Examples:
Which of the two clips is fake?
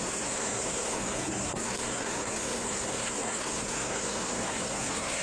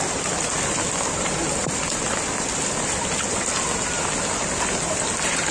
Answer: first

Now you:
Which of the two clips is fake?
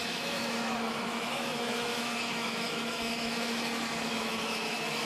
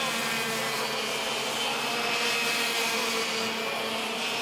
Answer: first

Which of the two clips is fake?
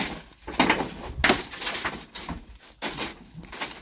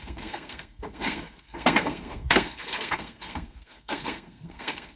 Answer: second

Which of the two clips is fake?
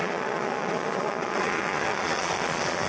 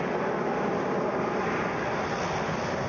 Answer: first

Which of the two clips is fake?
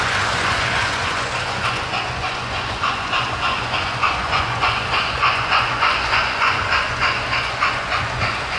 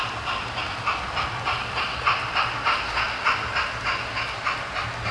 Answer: first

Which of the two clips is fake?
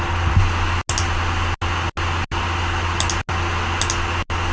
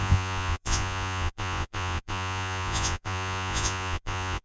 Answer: second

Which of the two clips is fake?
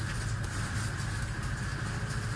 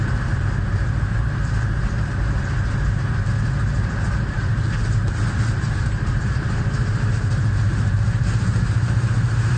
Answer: second